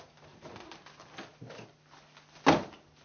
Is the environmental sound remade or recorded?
recorded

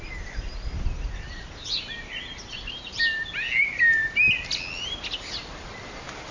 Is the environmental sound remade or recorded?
recorded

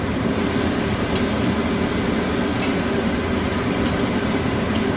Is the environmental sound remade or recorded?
recorded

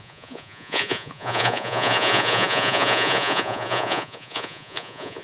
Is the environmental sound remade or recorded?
remade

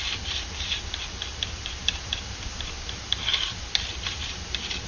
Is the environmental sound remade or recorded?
remade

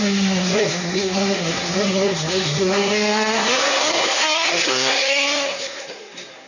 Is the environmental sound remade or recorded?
remade